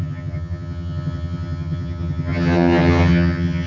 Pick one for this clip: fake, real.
fake